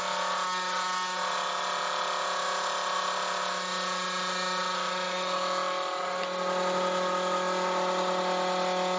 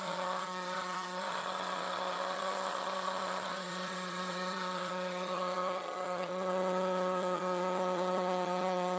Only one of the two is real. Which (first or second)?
first